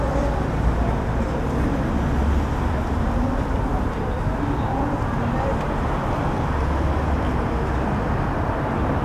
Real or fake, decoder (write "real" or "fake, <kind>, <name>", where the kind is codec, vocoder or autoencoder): real